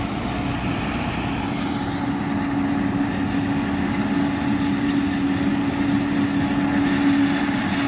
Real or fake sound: real